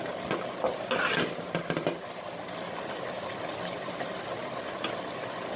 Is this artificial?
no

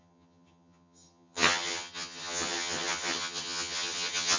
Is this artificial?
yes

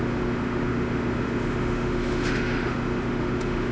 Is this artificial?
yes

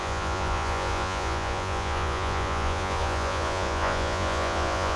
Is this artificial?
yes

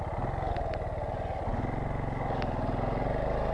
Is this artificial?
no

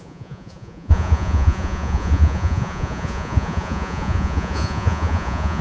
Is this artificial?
yes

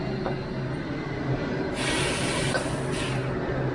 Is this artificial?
no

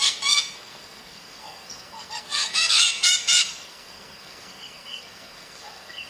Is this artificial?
yes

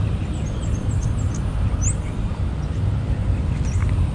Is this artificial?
no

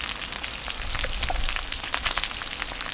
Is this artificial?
no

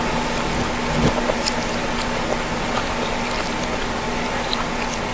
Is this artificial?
no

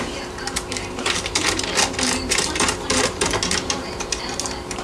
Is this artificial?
yes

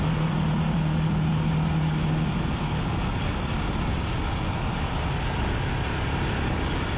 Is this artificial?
no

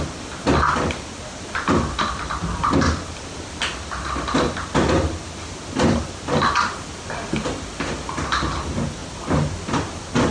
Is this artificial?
no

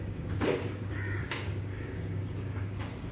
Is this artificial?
yes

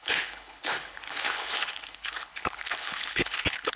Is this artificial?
yes